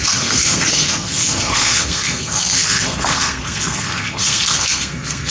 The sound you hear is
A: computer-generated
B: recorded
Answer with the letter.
A